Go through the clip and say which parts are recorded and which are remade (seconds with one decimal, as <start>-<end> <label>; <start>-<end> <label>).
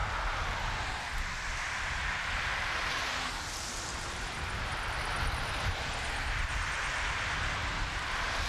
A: 0.0-3.3 recorded; 3.3-8.5 remade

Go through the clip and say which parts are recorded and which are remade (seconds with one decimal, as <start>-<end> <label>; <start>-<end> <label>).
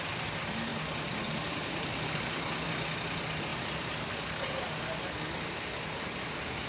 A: 0.0-0.7 recorded; 0.7-2.2 remade; 2.2-3.5 recorded; 3.5-4.6 remade; 4.6-6.7 recorded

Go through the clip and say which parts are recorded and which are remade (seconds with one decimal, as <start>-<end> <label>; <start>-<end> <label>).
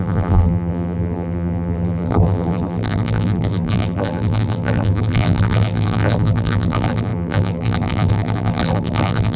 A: 0.0-9.4 remade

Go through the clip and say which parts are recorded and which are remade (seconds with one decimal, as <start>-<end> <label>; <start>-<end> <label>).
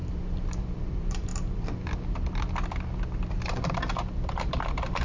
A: 0.0-1.3 remade; 1.3-4.3 recorded; 4.3-5.0 remade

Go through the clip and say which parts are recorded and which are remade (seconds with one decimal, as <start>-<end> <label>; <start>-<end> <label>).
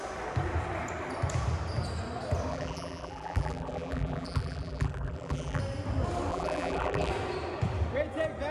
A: 0.0-2.5 recorded; 2.5-5.6 remade; 5.6-6.3 recorded; 6.3-7.1 remade; 7.1-8.5 recorded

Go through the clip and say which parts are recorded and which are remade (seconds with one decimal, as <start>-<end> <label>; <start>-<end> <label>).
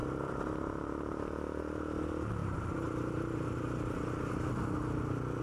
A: 0.0-1.6 remade; 1.6-2.4 recorded; 2.4-4.5 remade; 4.5-5.4 recorded